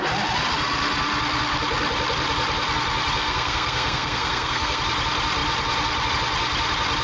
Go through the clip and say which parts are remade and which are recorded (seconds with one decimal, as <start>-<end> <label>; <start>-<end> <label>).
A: 0.0-3.2 recorded; 3.2-4.8 remade; 4.8-7.0 recorded